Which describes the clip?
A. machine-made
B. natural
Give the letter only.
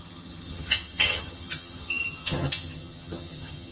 A